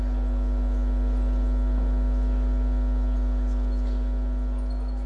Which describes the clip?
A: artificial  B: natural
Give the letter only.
B